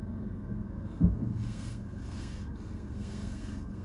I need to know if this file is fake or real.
fake